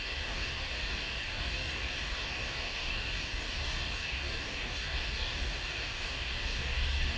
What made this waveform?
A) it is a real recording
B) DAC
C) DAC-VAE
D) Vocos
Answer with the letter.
B